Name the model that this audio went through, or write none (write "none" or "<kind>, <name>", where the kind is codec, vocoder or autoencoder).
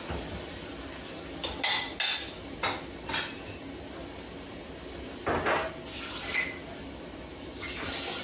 none